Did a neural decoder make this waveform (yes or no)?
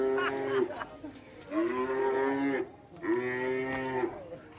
no